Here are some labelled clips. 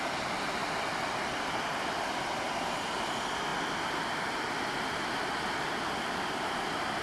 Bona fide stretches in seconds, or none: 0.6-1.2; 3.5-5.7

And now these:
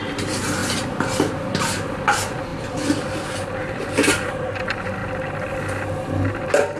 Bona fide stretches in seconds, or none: 0.0-6.8

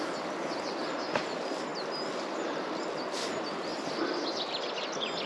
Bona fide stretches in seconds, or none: 0.0-5.3

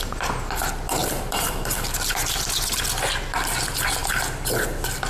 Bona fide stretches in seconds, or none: 0.0-1.0; 2.3-5.1

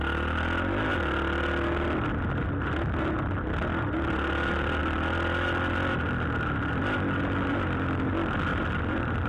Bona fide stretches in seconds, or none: 0.0-8.5